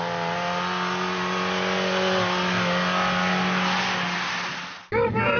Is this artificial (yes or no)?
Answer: no